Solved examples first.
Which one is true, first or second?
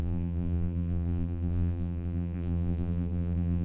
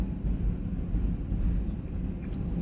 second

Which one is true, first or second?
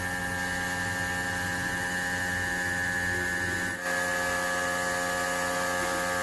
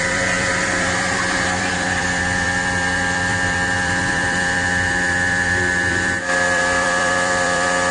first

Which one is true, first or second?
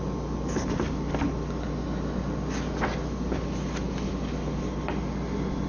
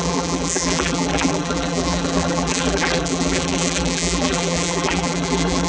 first